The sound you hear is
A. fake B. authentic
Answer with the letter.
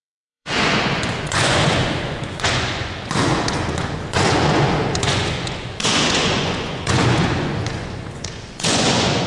A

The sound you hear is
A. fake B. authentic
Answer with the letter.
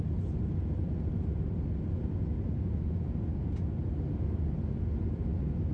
B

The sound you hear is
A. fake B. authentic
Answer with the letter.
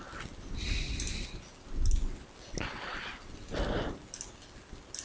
B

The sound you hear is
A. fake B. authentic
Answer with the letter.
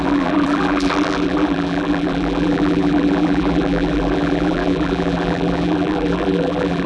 A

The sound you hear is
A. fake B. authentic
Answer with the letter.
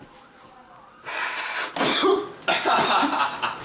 B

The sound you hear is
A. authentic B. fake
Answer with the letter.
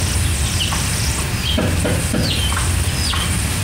B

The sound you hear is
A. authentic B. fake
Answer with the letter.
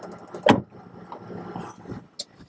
A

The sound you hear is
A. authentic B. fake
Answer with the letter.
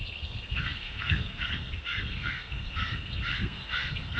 B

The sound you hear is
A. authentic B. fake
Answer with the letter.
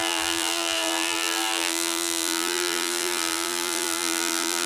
B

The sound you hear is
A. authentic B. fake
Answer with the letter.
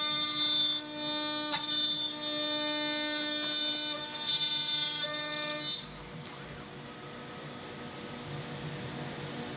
A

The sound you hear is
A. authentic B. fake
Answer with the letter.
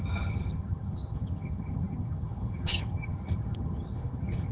B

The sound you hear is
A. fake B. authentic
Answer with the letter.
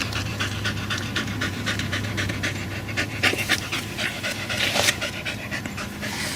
A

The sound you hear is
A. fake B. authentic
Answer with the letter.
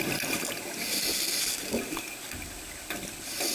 B